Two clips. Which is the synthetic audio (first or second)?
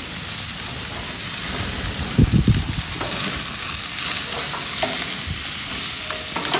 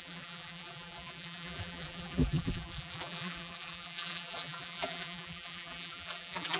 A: second